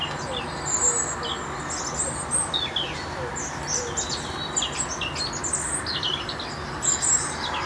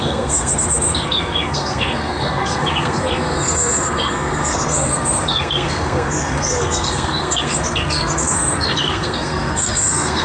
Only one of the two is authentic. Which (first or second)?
first